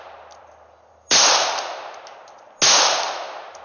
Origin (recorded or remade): recorded